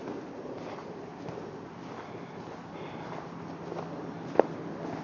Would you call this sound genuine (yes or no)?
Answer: yes